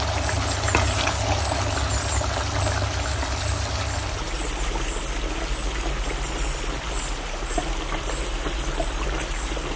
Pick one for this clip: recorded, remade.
recorded